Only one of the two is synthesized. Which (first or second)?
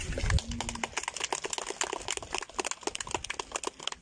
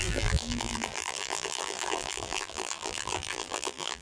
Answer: second